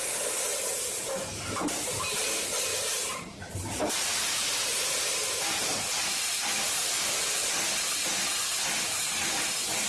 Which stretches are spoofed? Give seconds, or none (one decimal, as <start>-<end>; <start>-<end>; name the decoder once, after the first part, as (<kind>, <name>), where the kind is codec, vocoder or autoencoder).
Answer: 1.3-2.3 (vocoder, BigVGAN v2); 2.7-6.1